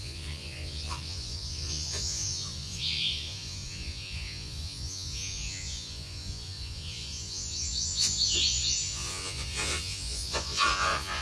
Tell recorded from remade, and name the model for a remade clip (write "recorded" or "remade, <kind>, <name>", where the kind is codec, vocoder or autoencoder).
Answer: remade, vocoder, Vocos